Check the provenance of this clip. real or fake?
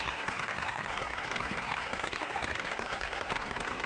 fake